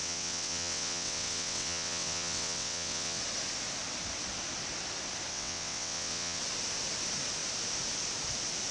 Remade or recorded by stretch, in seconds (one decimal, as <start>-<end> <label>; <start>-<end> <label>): 0.0-3.2 remade; 3.2-5.3 recorded; 5.3-6.4 remade; 6.4-8.7 recorded